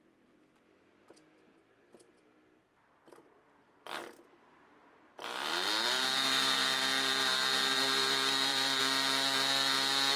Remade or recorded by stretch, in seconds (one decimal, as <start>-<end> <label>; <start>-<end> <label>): 0.0-4.8 recorded; 4.8-8.8 remade; 8.8-10.2 recorded